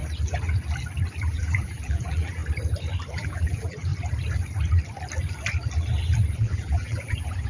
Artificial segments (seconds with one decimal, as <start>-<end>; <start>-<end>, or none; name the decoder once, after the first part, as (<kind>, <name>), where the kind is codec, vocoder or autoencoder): 1.2-2.4 (vocoder, BigVGAN v2); 3.1-3.9; 6.3-7.5